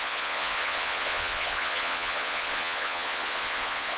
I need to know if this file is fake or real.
fake